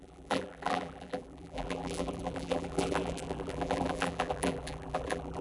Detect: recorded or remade remade